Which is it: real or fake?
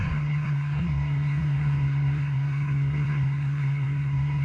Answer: fake